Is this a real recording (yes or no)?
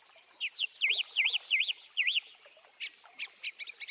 yes